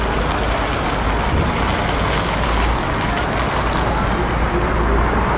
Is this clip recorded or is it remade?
recorded